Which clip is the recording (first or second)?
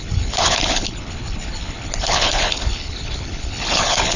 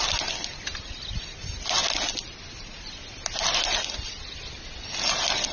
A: second